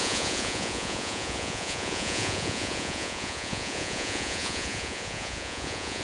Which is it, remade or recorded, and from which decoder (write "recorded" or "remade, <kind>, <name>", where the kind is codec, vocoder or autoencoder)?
remade, vocoder, Vocos